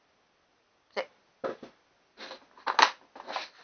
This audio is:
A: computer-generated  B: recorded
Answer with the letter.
B